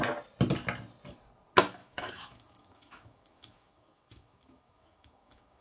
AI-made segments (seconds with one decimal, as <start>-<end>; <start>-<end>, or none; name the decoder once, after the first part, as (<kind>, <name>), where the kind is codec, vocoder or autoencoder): 1.8-5.6 (autoencoder, DAC-VAE)